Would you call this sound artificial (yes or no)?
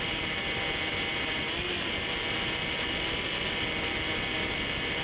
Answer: no